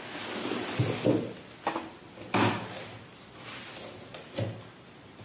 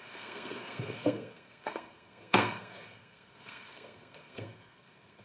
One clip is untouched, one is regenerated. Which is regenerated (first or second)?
second